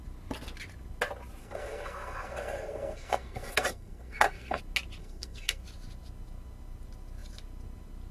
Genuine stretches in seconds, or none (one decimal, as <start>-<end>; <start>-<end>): 0.0-1.4; 4.6-5.0; 5.6-8.1